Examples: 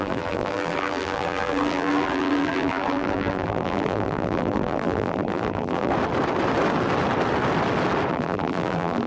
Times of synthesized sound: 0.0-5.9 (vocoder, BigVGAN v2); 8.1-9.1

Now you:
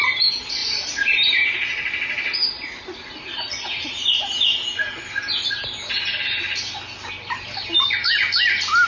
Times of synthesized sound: 0.6-5.5 (vocoder, BigVGAN v2)

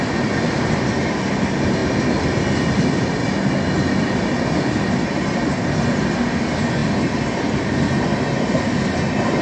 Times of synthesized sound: none

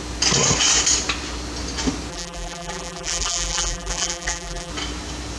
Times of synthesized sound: 2.1-4.7 (vocoder, BigVGAN v2)

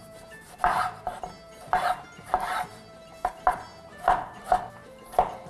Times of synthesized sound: 0.0-3.3 (vocoder, BigVGAN v2); 3.7-5.5

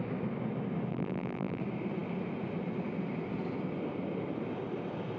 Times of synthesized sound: 0.9-1.6 (vocoder, BigVGAN v2)

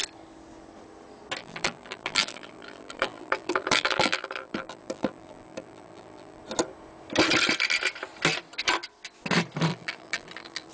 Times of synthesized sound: 1.4-6.4 (vocoder, BigVGAN v2); 9.7-10.7

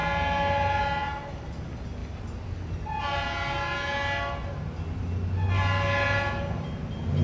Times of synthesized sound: none